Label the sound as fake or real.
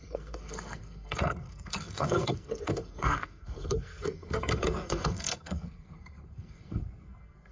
fake